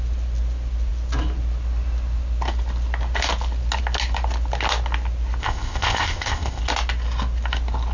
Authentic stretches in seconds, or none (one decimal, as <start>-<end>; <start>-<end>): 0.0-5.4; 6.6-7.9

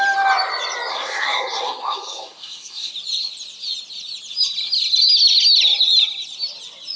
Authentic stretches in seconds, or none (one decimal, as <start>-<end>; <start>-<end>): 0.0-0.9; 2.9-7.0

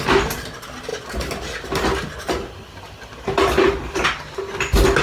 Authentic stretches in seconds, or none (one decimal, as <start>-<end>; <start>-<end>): 0.0-5.0